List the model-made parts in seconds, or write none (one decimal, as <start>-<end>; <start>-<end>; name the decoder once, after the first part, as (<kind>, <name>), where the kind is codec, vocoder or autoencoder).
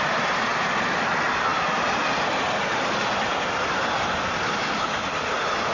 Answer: none